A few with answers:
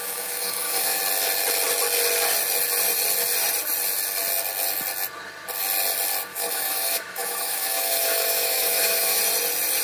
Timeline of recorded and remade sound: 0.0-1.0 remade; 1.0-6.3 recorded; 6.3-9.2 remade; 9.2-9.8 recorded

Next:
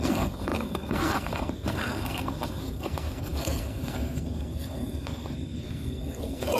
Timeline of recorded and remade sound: 0.0-6.6 remade

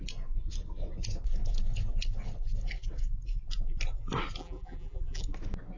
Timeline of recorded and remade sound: 0.0-4.4 recorded; 4.4-5.2 remade; 5.2-5.8 recorded

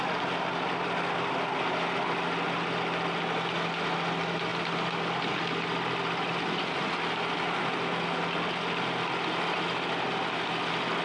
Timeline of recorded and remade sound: 0.0-11.0 recorded

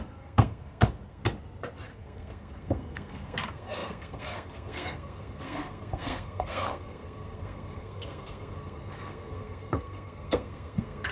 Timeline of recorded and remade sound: 0.0-1.2 remade; 1.2-1.9 recorded; 1.9-11.1 remade

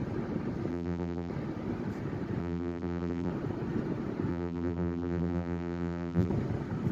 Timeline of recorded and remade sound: 0.0-0.7 recorded; 0.7-1.3 remade; 1.3-2.4 recorded; 2.4-3.3 remade; 3.3-4.3 recorded; 4.3-6.3 remade; 6.3-6.9 recorded

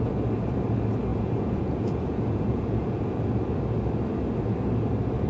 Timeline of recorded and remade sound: 0.0-1.1 recorded; 1.1-3.3 remade; 3.3-5.3 recorded